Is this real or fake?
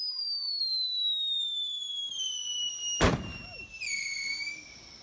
fake